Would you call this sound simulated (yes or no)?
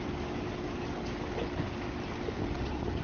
no